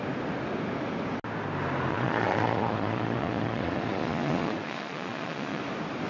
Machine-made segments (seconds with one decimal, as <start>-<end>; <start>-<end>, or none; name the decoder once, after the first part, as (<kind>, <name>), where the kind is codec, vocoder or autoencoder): 1.9-5.6 (vocoder, Vocos)